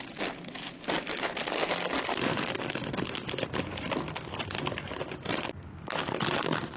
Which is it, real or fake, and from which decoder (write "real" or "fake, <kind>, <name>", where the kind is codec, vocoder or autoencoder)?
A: real